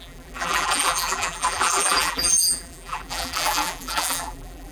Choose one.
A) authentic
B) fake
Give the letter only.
B